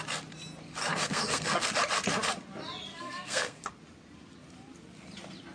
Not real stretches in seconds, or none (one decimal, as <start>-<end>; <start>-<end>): 0.8-1.7; 2.9-3.7